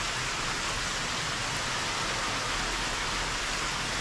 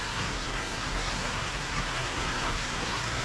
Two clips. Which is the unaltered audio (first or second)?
first